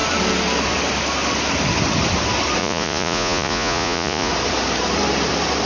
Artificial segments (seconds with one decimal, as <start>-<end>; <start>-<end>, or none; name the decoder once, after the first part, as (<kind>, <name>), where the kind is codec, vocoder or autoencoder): 2.6-4.3 (vocoder, Vocos)